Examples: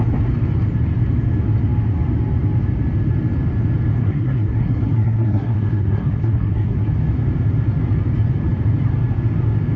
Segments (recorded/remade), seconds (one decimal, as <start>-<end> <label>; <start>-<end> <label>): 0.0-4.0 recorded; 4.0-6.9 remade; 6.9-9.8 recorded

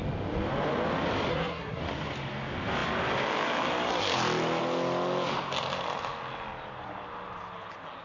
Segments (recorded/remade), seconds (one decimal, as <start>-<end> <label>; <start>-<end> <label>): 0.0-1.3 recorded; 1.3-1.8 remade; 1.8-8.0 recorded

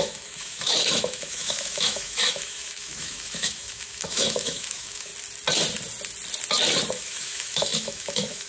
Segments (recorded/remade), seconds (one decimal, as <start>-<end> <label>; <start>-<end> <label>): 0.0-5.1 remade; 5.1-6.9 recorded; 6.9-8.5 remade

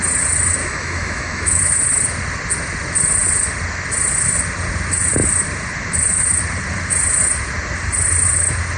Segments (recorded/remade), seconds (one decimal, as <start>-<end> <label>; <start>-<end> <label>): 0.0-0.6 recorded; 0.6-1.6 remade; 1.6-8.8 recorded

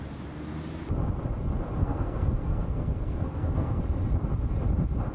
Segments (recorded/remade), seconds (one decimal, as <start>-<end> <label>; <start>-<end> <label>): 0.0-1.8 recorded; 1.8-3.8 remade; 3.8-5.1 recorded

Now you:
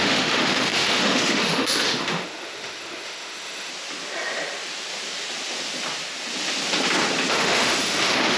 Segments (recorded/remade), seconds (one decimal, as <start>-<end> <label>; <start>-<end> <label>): 0.0-3.7 remade; 3.7-7.3 recorded; 7.3-8.4 remade

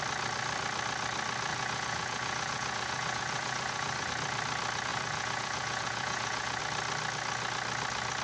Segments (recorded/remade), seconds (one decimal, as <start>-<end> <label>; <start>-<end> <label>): 0.0-1.5 recorded; 1.5-4.1 remade; 4.1-4.9 recorded; 4.9-6.6 remade; 6.6-8.2 recorded

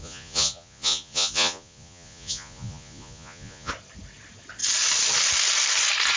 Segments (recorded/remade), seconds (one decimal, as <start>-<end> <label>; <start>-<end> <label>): 0.0-3.7 remade; 3.7-6.2 recorded